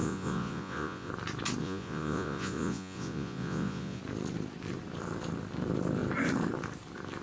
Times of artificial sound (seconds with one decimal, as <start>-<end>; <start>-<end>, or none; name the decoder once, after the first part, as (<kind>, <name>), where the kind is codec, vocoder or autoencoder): 0.0-1.1 (vocoder, Vocos); 1.6-4.0